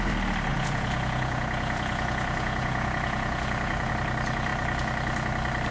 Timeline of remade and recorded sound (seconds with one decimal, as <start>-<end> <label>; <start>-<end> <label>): 0.0-0.5 recorded; 0.5-3.9 remade; 3.9-5.7 recorded